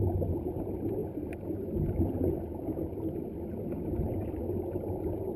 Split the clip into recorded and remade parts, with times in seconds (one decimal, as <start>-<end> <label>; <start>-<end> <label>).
0.0-5.4 recorded